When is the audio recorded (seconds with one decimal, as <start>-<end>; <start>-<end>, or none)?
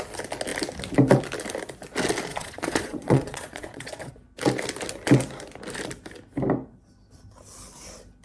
0.0-2.3; 4.1-8.2